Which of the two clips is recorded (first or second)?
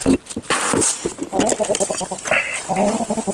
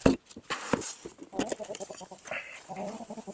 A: first